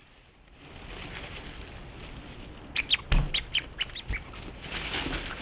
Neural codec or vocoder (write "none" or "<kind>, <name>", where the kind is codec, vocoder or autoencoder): none